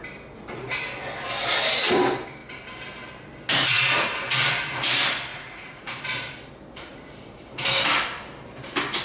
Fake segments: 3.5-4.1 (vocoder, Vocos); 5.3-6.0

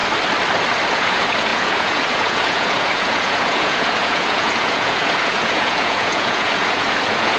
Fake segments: 0.9-7.4 (vocoder, Vocos)

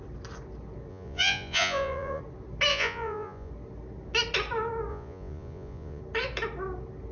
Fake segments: 0.9-2.2 (vocoder, Vocos); 2.7-3.5; 4.9-6.0

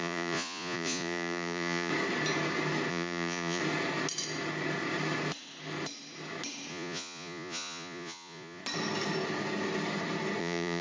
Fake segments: 0.0-1.9 (vocoder, Vocos); 2.9-3.6; 6.7-8.6; 10.4-10.8

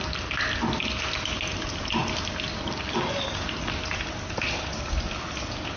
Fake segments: none

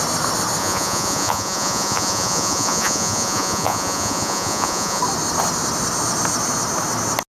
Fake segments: 0.6-5.0 (vocoder, Vocos)

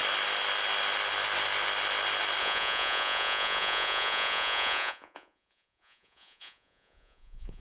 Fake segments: 2.4-7.6 (vocoder, Vocos)